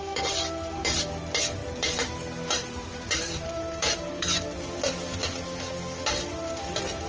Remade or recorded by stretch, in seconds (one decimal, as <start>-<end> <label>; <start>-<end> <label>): 0.0-1.6 recorded; 1.6-4.1 remade; 4.1-7.1 recorded